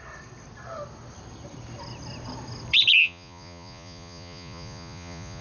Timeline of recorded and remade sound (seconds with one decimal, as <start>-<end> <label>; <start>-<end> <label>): 0.0-3.0 recorded; 3.0-5.4 remade